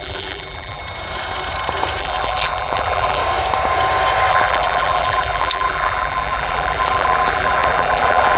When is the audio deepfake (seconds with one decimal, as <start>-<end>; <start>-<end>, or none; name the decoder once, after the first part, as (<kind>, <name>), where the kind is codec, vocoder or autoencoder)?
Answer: 0.0-0.8 (vocoder, BigVGAN v2); 2.0-3.2; 4.3-8.4